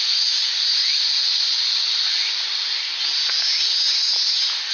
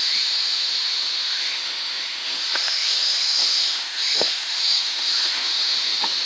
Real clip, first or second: first